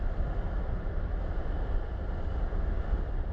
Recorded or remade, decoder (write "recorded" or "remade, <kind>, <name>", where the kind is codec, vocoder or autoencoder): recorded